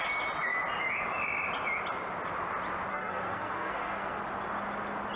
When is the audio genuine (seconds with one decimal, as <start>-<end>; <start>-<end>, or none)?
0.0-2.9; 4.2-5.2